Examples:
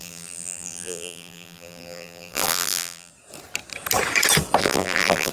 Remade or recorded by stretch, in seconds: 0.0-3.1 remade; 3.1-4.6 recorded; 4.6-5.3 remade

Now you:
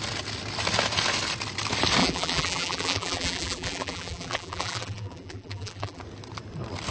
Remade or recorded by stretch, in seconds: 0.0-2.0 recorded; 2.0-6.0 remade; 6.0-6.9 recorded